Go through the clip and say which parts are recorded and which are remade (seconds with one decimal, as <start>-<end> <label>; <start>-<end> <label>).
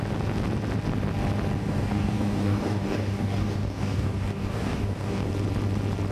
0.0-1.6 recorded; 1.6-5.3 remade; 5.3-6.1 recorded